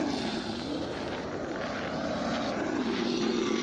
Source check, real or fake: real